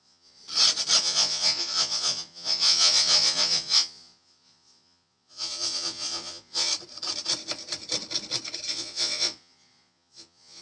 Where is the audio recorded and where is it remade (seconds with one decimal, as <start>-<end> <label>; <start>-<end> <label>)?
0.0-0.4 remade; 0.4-1.0 recorded; 1.0-6.7 remade; 6.7-8.7 recorded; 8.7-10.6 remade